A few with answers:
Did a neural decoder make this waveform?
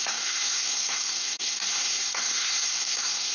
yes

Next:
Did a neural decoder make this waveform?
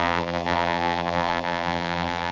yes